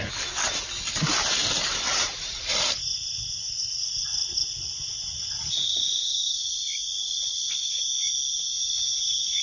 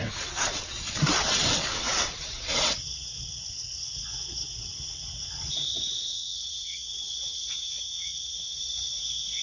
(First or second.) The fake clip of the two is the second